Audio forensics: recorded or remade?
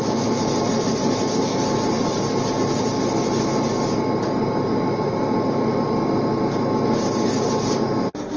recorded